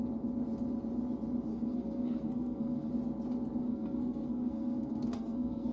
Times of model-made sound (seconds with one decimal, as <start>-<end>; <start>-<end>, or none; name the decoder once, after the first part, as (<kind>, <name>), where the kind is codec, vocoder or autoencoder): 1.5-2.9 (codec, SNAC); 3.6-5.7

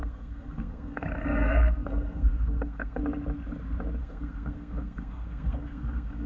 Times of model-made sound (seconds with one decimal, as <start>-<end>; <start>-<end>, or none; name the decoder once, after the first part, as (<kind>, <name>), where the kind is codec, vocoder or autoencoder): 0.0-3.0 (codec, SNAC); 4.0-6.3

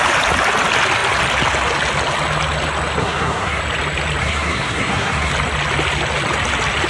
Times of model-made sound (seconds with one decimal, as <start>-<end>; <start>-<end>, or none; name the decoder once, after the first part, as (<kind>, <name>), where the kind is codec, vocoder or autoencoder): 3.0-3.6 (codec, SNAC); 4.2-5.3